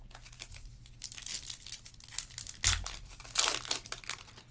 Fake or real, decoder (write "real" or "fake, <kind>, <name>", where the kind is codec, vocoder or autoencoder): real